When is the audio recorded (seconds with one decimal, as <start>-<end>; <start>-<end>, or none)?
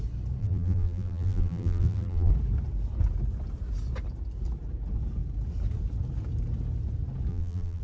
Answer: 0.0-0.4; 2.3-7.3